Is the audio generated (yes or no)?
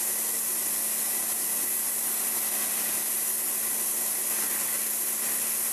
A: no